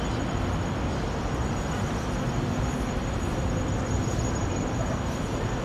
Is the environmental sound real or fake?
real